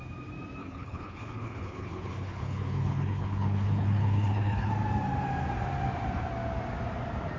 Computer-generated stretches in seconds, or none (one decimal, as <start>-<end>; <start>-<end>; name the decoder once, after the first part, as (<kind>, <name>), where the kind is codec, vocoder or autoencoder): 0.6-4.7 (codec, HILCodec)